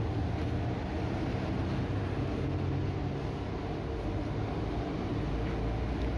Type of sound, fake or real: real